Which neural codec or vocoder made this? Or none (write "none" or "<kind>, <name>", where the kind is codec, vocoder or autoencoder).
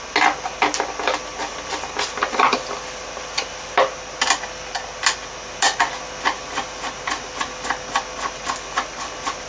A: none